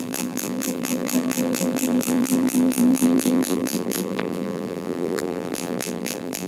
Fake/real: fake